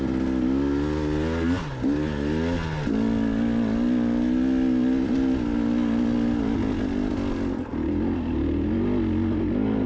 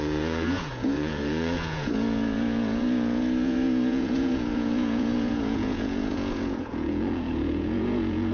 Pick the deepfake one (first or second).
second